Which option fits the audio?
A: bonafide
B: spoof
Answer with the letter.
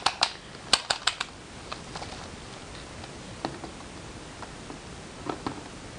A